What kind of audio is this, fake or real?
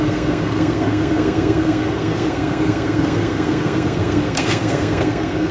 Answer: fake